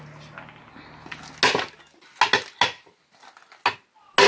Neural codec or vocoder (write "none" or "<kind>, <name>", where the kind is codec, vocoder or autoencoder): none